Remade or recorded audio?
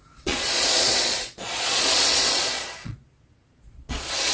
remade